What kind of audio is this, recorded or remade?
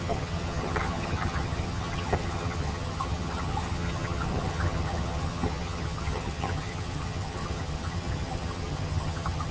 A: remade